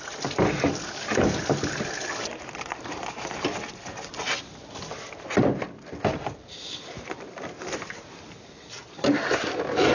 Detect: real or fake fake